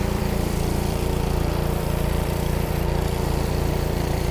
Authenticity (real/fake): fake